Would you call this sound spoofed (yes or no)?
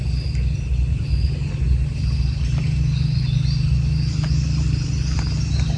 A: no